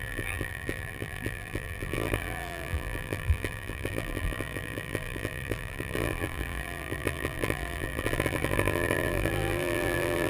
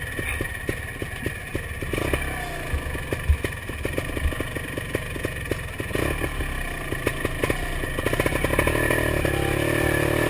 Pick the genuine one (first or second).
second